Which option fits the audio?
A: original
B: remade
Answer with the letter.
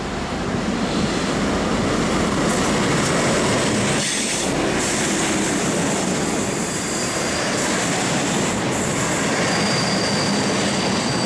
A